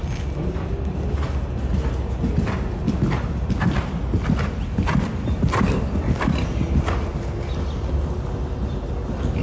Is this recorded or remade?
recorded